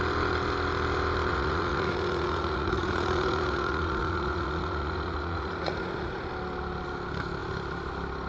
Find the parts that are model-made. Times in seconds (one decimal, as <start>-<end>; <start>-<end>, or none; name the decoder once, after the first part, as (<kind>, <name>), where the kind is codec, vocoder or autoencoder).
1.3-6.3 (vocoder, Vocos)